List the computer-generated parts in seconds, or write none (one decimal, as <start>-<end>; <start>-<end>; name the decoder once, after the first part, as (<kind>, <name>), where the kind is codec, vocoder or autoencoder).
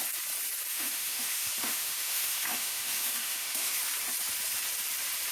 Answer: 0.7-3.8 (autoencoder, DAC-VAE)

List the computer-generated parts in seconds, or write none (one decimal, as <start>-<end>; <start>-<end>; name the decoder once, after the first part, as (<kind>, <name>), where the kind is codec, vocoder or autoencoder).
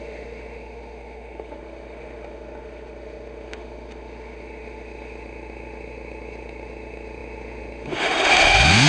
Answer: 0.0-8.9 (autoencoder, DAC-VAE)